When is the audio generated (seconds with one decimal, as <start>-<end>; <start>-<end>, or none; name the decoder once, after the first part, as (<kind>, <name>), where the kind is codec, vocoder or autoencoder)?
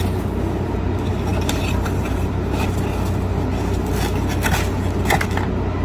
1.3-2.7 (vocoder, BigVGAN v2)